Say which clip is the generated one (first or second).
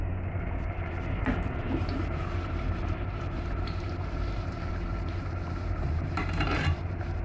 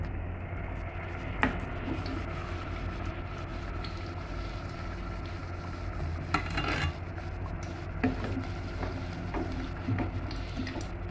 first